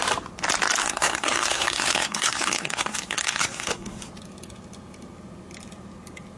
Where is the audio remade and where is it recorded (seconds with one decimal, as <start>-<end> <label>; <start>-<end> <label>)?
0.0-0.8 recorded; 0.8-4.1 remade; 4.1-6.4 recorded